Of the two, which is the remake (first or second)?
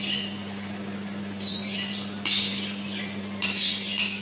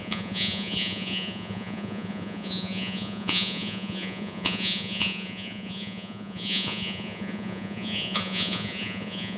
second